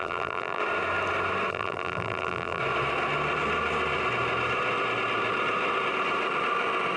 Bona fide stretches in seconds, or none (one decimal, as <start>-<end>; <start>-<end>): 0.6-1.5; 2.6-7.0